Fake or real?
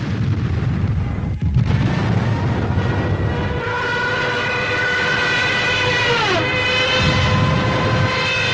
real